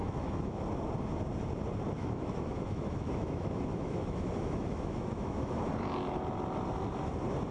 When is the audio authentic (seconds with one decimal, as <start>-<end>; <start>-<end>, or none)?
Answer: 0.6-2.0; 5.6-7.5